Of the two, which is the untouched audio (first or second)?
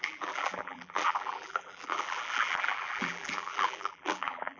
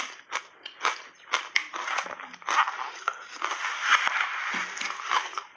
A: second